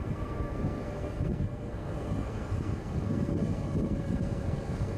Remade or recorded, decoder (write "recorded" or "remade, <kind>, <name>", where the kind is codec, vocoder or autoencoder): remade, codec, SNAC